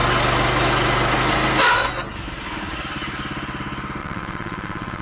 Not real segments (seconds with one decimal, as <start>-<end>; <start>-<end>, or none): 4.0-5.0